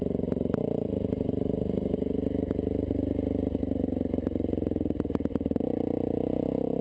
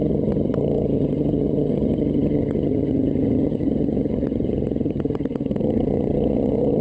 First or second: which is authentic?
first